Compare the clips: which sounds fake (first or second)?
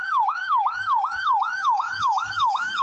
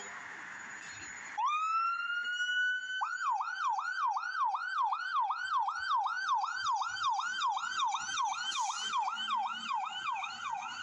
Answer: first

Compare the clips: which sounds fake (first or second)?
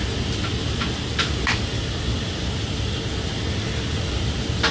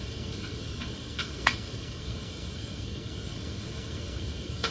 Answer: second